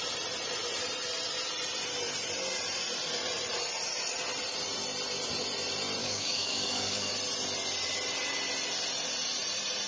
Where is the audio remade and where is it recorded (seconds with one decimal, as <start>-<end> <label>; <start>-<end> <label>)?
0.0-6.0 recorded; 6.0-7.1 remade; 7.1-9.9 recorded